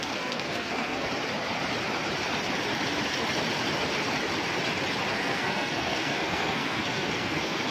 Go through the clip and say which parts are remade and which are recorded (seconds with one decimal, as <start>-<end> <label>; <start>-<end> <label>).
0.0-1.1 remade; 1.1-5.1 recorded; 5.1-7.7 remade